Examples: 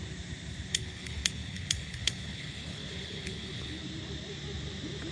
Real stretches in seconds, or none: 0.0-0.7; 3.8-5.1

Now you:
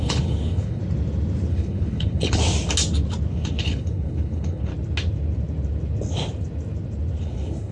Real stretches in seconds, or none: 0.8-1.5; 2.4-3.3; 4.7-7.2

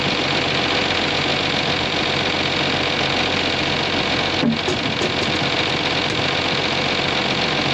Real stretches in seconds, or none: 0.0-7.7